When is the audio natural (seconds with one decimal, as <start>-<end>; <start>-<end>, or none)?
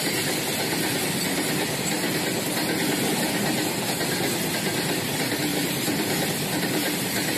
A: 0.0-5.5; 6.6-7.4